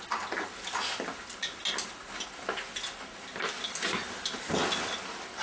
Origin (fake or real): real